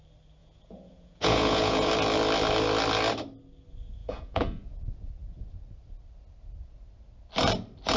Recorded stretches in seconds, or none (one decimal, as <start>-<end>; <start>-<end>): 0.0-0.4; 1.9-4.0; 5.1-8.0